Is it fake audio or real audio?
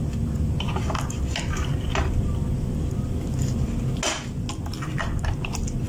real